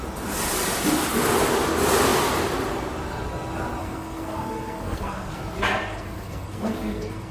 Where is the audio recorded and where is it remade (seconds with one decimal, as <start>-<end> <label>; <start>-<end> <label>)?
0.0-3.8 recorded; 3.8-5.4 remade; 5.4-5.9 recorded; 5.9-7.3 remade